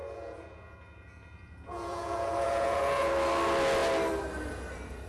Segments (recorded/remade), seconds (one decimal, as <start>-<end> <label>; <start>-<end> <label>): 0.0-3.1 remade; 3.1-5.1 recorded